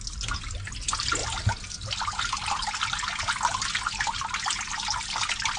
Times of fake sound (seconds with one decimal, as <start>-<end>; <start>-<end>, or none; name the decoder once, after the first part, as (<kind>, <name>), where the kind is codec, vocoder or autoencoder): none